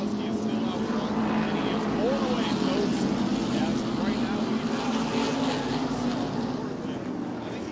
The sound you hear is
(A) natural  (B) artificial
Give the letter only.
A